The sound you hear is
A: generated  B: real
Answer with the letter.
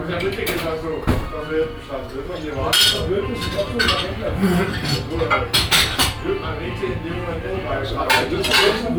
B